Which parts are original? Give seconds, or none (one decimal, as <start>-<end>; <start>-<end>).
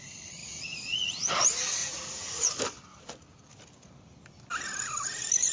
0.0-0.4; 1.3-1.8; 2.6-5.5